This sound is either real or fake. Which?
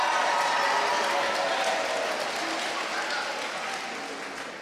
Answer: real